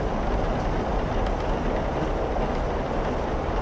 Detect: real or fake real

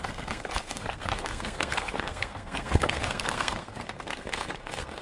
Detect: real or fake fake